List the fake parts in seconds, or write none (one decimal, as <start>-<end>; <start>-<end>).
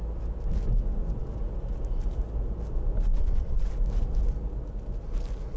3.1-3.7